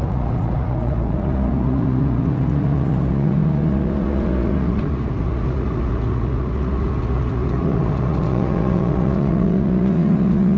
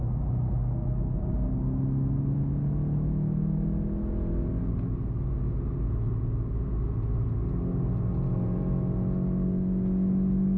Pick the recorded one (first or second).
second